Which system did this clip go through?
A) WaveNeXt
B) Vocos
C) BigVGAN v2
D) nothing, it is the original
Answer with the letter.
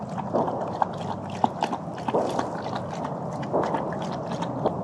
D